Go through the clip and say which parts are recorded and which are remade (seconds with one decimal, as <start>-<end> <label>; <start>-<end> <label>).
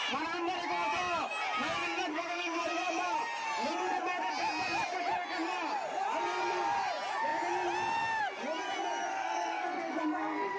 0.0-2.1 recorded; 2.1-2.6 remade; 2.6-9.1 recorded; 9.1-10.6 remade